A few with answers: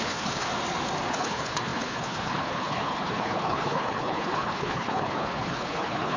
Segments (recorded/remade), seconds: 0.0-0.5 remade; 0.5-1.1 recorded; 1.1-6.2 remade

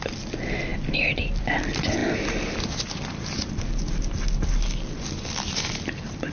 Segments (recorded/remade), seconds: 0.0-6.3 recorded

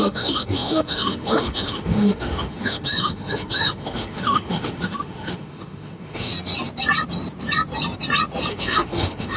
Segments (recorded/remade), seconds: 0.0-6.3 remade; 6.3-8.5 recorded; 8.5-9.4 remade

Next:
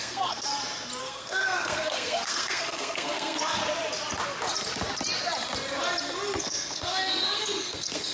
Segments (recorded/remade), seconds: 0.0-0.5 remade; 0.5-1.0 recorded; 1.0-3.6 remade; 3.6-6.4 recorded; 6.4-8.1 remade

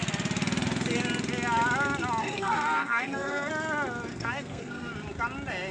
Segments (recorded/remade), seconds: 0.0-2.2 recorded; 2.2-3.5 remade; 3.5-4.1 recorded; 4.1-4.9 remade; 4.9-5.7 recorded